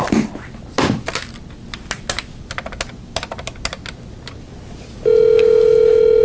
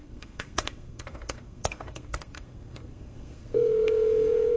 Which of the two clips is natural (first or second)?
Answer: first